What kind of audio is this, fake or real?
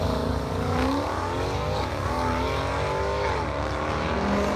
fake